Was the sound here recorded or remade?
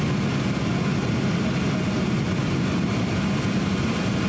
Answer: recorded